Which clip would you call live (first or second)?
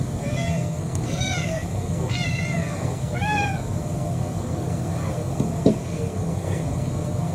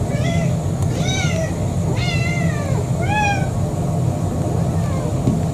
second